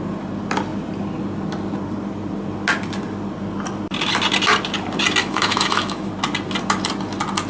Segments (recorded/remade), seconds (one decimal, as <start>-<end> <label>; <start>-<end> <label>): 0.0-5.2 recorded; 5.2-6.1 remade; 6.1-7.5 recorded